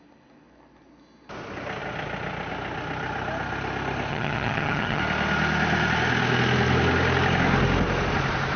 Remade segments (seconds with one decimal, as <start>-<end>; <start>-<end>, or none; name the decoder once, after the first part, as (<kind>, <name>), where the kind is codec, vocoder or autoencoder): 4.1-5.0 (vocoder, HiFi-GAN)